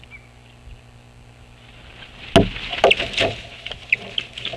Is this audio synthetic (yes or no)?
no